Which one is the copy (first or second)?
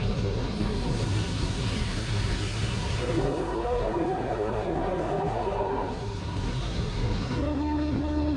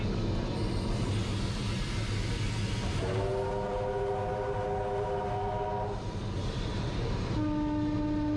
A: first